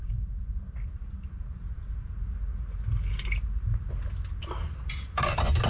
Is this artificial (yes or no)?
no